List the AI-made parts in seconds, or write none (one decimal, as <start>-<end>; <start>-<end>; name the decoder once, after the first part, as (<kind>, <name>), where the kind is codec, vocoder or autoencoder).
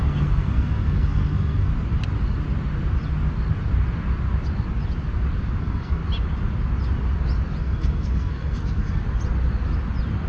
0.0-1.7 (codec, SNAC); 5.6-6.0; 7.6-9.0